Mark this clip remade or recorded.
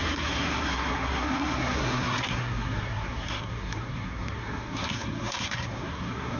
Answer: remade